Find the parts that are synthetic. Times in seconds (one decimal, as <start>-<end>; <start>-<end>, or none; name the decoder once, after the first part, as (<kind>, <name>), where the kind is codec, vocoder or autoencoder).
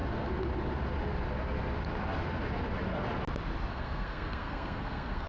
3.7-5.3 (codec, SNAC)